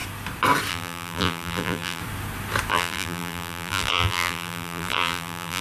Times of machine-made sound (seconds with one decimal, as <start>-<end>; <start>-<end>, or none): 0.7-2.0; 2.7-5.6